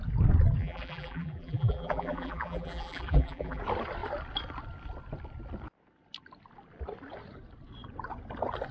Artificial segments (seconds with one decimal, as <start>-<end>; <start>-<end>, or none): 0.6-3.6